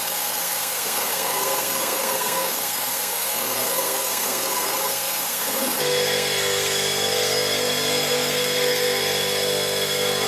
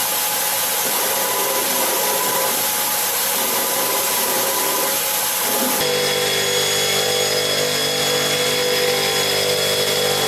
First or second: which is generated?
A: first